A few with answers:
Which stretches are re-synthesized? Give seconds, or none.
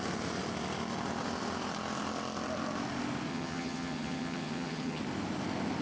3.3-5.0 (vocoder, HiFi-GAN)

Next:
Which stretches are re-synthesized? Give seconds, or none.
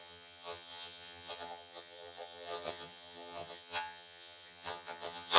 0.0-5.4 (vocoder, HiFi-GAN)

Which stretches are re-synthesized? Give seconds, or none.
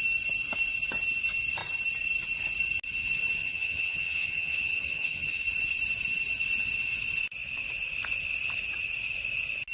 3.4-5.4 (vocoder, HiFi-GAN)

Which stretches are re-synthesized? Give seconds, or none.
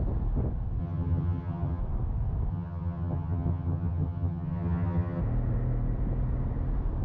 0.8-1.8 (vocoder, HiFi-GAN); 2.5-5.2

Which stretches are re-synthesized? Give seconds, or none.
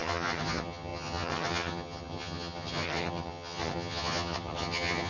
0.0-5.1 (vocoder, HiFi-GAN)